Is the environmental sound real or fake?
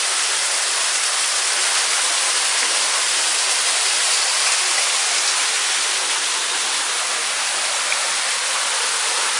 real